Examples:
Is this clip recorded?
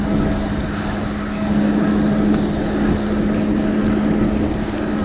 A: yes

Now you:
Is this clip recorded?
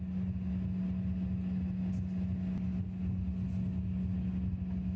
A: yes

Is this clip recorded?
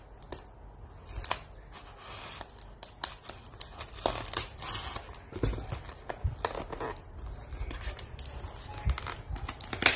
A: yes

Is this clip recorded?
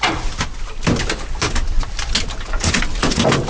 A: yes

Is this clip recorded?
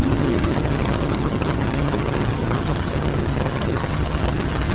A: no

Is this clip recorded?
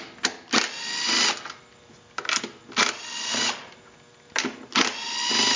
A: yes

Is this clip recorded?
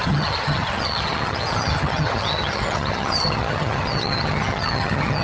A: no